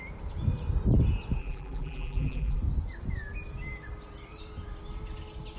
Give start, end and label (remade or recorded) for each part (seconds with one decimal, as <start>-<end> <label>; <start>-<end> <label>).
0.0-1.4 recorded; 1.4-2.6 remade; 2.6-5.6 recorded